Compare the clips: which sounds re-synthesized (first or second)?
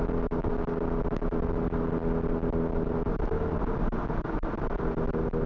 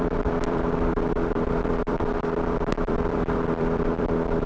second